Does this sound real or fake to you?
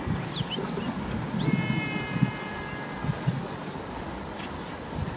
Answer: real